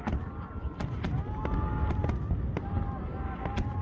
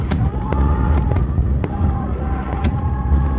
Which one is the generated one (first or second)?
second